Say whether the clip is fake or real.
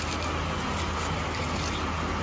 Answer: real